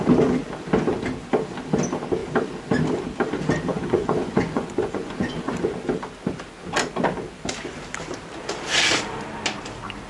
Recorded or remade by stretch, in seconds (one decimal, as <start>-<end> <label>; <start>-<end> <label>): 0.0-3.7 recorded; 3.7-5.5 remade; 5.5-10.1 recorded